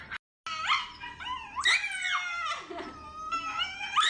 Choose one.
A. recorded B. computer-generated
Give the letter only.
A